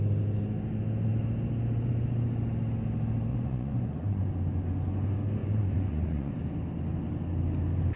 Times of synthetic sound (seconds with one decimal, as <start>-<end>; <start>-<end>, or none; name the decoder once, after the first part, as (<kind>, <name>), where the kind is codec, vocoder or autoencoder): 3.3-4.3 (vocoder, Vocos); 5.4-6.3